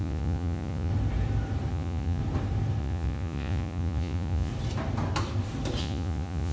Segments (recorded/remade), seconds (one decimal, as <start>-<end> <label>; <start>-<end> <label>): 0.0-0.9 remade; 0.9-1.7 recorded; 1.7-2.2 remade; 2.2-2.8 recorded; 2.8-4.5 remade; 4.5-5.8 recorded; 5.8-6.5 remade